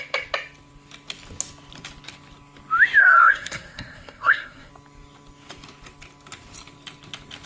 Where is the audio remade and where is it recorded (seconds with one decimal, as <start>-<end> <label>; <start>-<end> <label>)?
0.0-3.0 recorded; 3.0-4.7 remade; 4.7-7.5 recorded